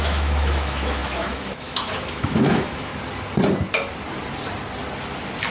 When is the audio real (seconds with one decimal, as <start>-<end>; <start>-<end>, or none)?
2.9-5.5